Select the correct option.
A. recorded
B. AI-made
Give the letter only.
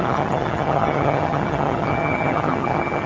B